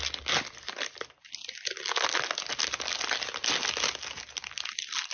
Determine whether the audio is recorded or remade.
recorded